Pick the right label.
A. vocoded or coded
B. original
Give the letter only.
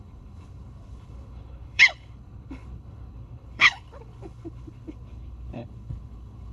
A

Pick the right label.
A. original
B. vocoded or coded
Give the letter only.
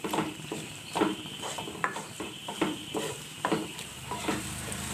B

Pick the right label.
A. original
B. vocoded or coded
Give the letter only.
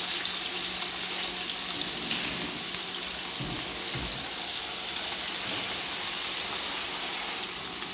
A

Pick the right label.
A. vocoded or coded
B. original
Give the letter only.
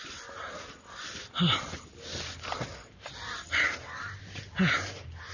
B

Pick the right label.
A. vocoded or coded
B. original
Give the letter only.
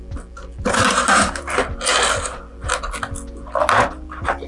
B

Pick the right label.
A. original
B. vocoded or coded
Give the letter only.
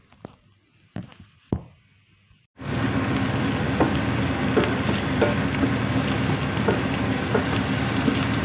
A